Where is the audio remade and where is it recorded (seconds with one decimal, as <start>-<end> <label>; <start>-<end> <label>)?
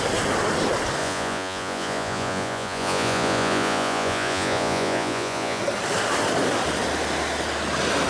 0.0-1.0 recorded; 1.0-5.6 remade; 5.6-8.1 recorded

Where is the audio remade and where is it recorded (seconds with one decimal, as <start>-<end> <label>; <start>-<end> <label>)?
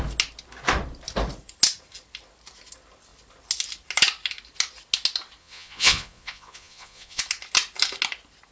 0.0-5.4 recorded; 5.4-7.2 remade; 7.2-8.5 recorded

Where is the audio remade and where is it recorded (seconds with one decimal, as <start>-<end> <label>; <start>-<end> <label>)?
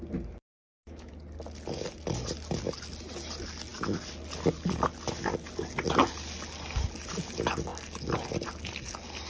0.0-0.4 recorded; 0.4-1.1 remade; 1.1-9.3 recorded